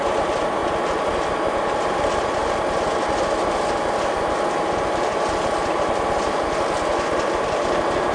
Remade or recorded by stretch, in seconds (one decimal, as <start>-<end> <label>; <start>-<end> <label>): 0.0-0.6 recorded; 0.6-1.9 remade; 1.9-2.4 recorded; 2.4-3.8 remade; 3.8-8.1 recorded